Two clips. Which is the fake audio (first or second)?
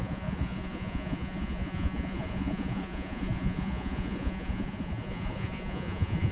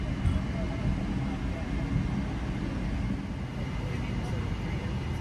first